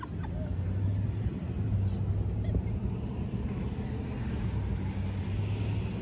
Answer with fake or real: real